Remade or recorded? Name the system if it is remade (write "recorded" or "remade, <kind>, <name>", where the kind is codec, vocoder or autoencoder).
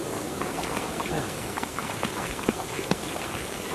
remade, codec, SNAC